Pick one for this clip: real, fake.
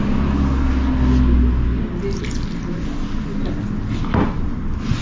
real